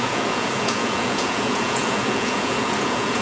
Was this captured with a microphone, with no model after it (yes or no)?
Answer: no